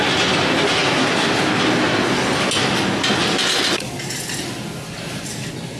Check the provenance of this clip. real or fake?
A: real